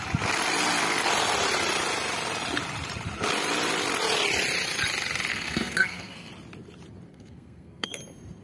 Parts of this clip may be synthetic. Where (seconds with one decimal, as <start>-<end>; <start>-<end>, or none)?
5.3-6.3; 7.1-8.0